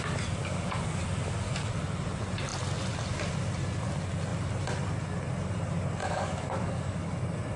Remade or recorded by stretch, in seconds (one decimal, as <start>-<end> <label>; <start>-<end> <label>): 0.0-0.4 recorded; 0.4-1.0 remade; 1.0-6.0 recorded; 6.0-7.1 remade; 7.1-7.6 recorded